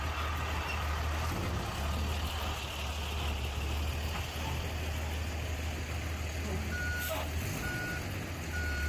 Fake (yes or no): no